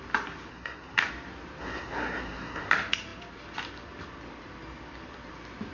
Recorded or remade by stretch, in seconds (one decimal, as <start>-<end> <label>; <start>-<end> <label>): 0.0-0.5 recorded; 0.5-1.0 remade; 1.0-1.6 recorded; 1.6-2.7 remade; 2.7-5.7 recorded

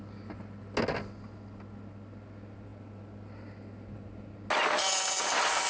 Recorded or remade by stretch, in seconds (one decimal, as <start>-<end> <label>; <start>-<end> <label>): 0.0-5.7 recorded

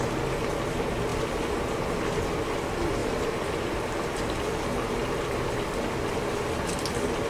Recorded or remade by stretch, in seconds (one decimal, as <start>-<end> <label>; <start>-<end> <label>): 0.0-3.0 recorded; 3.0-6.2 remade; 6.2-7.3 recorded

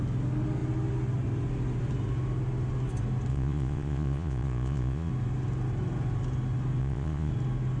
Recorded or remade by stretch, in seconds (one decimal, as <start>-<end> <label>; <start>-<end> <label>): 0.0-3.3 recorded; 3.3-5.1 remade; 5.1-6.8 recorded; 6.8-7.3 remade; 7.3-7.8 recorded

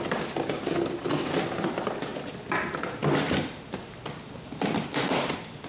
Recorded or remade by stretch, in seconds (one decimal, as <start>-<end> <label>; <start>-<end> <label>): 0.0-2.1 recorded; 2.1-5.7 remade

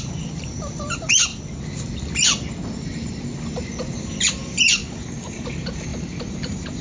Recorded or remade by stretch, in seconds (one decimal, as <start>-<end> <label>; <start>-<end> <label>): 0.0-1.3 remade; 1.3-2.8 recorded; 2.8-4.8 remade; 4.8-5.3 recorded; 5.3-6.8 remade

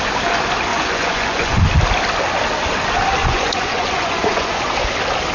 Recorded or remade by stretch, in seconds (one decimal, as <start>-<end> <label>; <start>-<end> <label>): 0.0-0.7 recorded; 0.7-1.6 remade; 1.6-3.2 recorded; 3.2-4.5 remade; 4.5-5.3 recorded

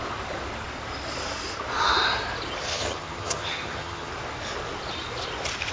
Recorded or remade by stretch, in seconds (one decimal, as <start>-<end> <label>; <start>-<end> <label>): 0.0-2.7 recorded; 2.7-4.1 remade; 4.1-5.7 recorded